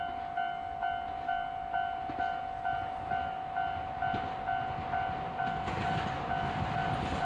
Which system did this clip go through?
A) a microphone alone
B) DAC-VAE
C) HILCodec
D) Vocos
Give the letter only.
A